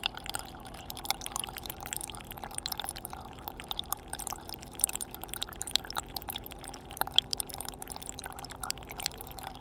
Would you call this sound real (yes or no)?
no